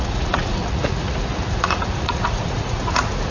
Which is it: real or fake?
fake